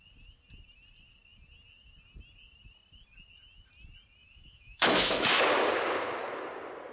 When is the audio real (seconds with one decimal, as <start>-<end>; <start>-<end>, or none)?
0.0-4.2; 5.4-6.9